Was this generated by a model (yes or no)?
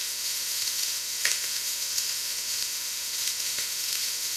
yes